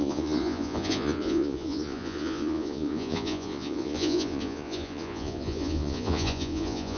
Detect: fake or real fake